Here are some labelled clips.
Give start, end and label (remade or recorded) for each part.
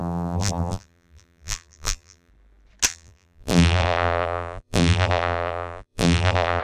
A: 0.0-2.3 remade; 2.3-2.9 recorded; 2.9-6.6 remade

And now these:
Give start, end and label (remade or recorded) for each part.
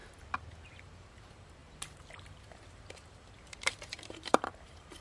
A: 0.0-0.8 recorded; 0.8-5.0 remade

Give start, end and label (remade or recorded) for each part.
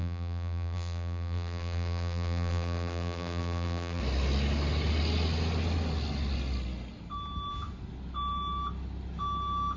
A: 0.0-4.0 remade; 4.0-9.8 recorded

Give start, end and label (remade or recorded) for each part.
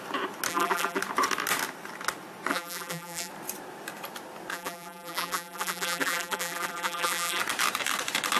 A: 0.0-0.5 recorded; 0.5-1.0 remade; 1.0-2.5 recorded; 2.5-3.3 remade; 3.3-4.5 recorded; 4.5-7.4 remade; 7.4-8.4 recorded